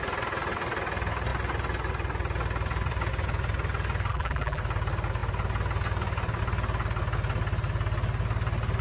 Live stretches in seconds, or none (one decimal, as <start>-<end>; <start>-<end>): 0.0-4.1; 4.6-8.8